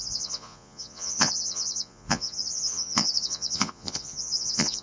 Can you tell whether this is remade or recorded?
remade